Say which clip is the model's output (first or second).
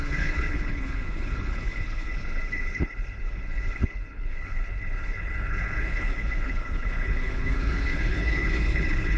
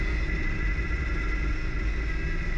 first